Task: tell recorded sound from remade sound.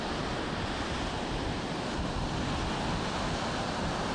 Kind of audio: recorded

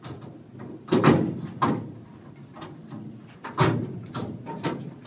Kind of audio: recorded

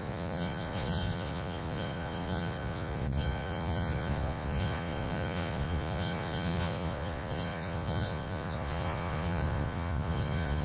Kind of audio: remade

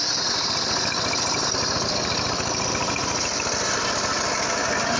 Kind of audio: recorded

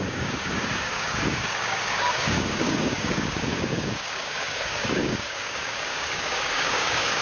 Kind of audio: remade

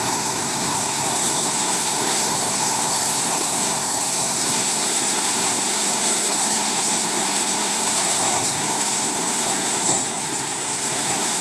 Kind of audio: remade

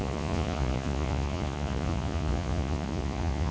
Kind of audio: remade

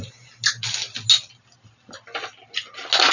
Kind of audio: recorded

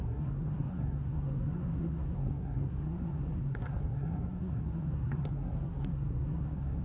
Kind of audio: remade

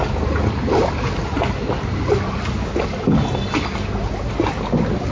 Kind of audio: recorded